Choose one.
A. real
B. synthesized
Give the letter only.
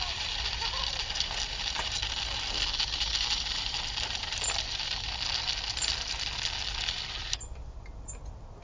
A